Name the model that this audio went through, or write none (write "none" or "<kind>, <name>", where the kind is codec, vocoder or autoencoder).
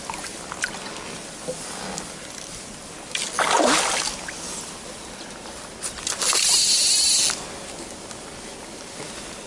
none